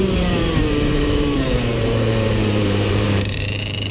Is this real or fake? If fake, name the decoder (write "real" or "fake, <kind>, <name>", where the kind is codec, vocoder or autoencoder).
fake, vocoder, BigVGAN v2